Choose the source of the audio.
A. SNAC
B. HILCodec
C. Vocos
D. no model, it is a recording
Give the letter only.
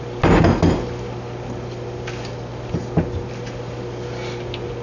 D